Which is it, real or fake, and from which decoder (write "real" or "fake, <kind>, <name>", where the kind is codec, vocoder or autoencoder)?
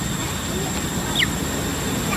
real